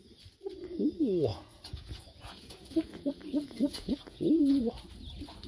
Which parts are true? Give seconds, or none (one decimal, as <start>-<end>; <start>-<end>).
0.0-1.3; 4.6-5.5

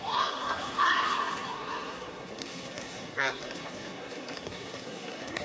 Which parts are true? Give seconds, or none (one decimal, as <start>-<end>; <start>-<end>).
none

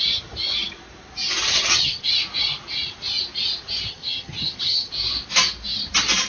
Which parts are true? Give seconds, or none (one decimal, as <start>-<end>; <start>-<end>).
0.0-1.5; 2.1-3.9; 4.9-6.3

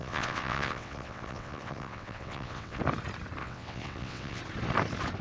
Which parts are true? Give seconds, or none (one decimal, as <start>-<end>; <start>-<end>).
2.8-3.4; 4.4-5.2

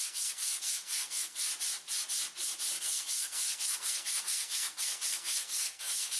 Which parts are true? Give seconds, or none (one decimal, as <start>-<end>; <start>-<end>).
1.5-2.8

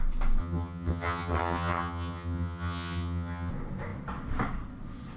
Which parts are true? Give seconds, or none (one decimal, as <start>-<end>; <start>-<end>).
0.0-0.4; 3.5-5.2

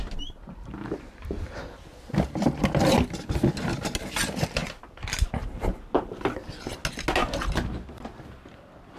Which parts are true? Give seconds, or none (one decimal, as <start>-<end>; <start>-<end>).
0.0-9.0